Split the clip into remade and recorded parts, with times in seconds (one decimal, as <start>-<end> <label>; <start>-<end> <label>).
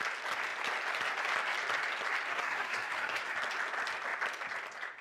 0.0-2.3 recorded; 2.3-3.2 remade; 3.2-5.0 recorded